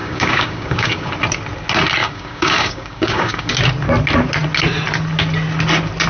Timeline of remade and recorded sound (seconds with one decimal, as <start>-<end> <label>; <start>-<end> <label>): 0.0-1.1 remade; 1.1-2.0 recorded; 2.0-3.5 remade; 3.5-6.1 recorded